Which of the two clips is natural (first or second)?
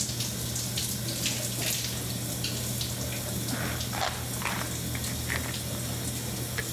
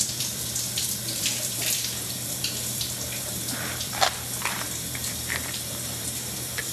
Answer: first